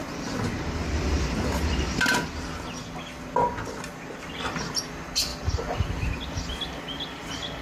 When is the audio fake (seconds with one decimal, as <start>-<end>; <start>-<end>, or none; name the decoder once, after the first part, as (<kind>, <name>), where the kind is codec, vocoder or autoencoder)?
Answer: none